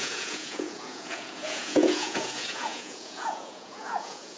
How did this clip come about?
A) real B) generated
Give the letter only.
B